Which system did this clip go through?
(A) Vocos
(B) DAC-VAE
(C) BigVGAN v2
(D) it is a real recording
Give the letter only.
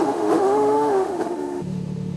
B